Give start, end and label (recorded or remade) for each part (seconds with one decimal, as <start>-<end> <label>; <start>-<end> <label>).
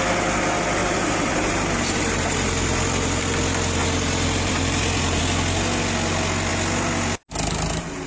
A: 0.0-0.8 recorded; 0.8-3.2 remade; 3.2-3.8 recorded; 3.8-5.2 remade; 5.2-8.1 recorded